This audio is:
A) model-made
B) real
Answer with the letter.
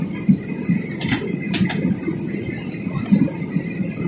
B